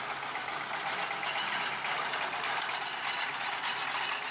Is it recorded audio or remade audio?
recorded